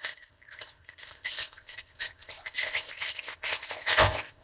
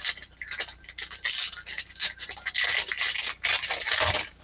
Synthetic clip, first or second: first